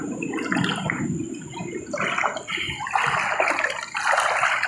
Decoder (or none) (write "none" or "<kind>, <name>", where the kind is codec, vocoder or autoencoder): none